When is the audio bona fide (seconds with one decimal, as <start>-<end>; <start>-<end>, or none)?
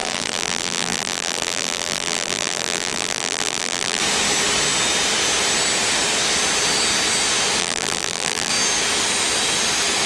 4.0-7.6; 8.5-10.1